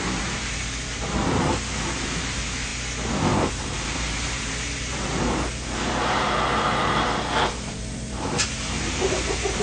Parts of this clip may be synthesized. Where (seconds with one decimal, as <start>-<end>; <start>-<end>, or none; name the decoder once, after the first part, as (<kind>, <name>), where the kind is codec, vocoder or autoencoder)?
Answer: 0.0-2.7 (vocoder, BigVGAN v2); 3.5-9.6